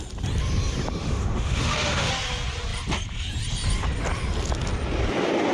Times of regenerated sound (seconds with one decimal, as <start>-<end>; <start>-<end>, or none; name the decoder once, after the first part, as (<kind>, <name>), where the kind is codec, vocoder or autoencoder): 1.0-2.1 (autoencoder, DAC-VAE)